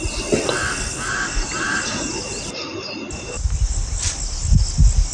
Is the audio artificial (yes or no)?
no